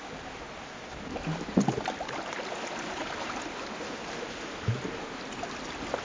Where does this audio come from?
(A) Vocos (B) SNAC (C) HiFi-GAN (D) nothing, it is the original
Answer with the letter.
D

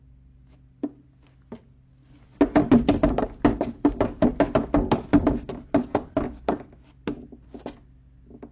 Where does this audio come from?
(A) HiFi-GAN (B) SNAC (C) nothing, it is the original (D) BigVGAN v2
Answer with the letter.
C